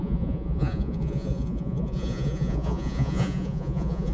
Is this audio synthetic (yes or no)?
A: yes